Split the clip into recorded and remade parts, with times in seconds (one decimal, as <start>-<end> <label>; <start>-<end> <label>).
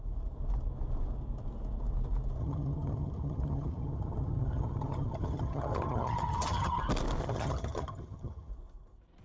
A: 0.0-2.4 recorded; 2.4-6.8 remade; 6.8-7.2 recorded; 7.2-8.5 remade; 8.5-9.2 recorded